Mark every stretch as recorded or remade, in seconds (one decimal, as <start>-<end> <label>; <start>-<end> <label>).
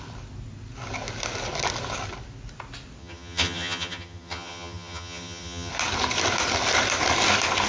0.0-3.0 recorded; 3.0-5.7 remade; 5.7-7.7 recorded